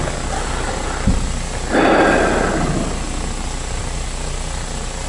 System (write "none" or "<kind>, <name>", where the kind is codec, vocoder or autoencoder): none